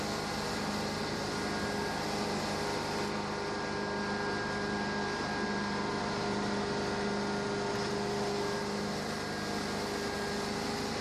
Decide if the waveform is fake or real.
real